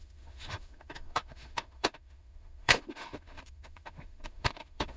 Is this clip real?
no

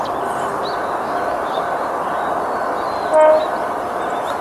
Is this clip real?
yes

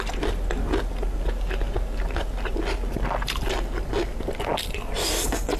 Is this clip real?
yes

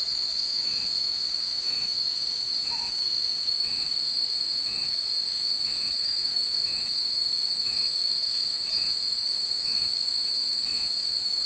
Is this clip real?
no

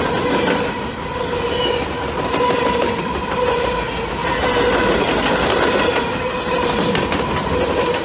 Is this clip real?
yes